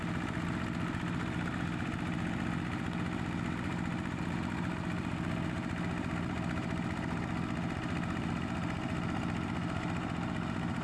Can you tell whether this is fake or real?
real